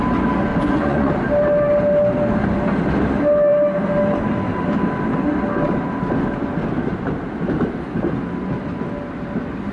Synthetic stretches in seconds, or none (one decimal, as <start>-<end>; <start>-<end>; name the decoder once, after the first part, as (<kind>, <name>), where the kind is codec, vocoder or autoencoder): 0.5-1.1 (vocoder, Vocos)